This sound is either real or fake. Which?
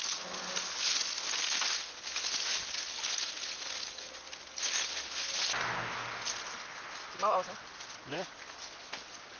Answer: real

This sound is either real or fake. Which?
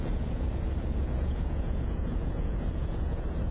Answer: fake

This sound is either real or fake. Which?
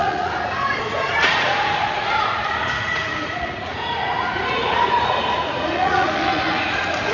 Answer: fake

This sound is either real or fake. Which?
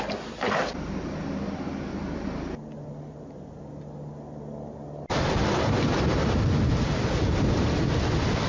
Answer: real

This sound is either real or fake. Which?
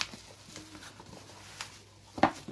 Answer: real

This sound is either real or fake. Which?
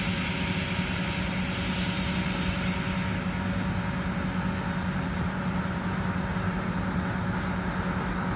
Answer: real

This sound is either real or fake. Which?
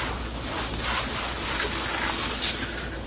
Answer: real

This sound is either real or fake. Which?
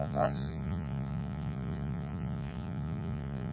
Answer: fake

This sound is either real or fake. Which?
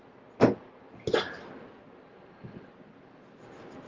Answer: real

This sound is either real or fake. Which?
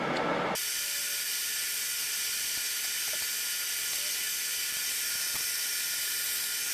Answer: real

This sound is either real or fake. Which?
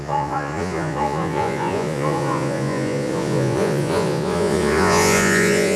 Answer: fake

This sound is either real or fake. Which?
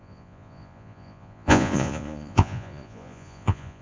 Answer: fake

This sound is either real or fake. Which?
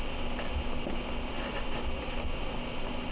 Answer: real